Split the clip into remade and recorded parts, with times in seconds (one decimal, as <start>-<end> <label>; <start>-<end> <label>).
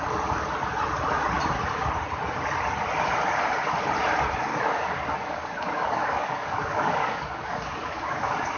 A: 0.0-4.5 recorded; 4.5-8.6 remade